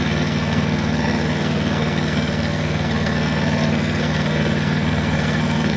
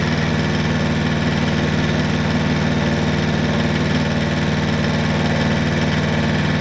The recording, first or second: second